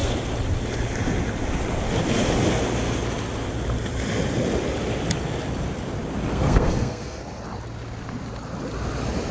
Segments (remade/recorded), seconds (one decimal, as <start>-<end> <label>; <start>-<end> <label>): 0.0-6.3 recorded; 6.3-7.2 remade; 7.2-9.3 recorded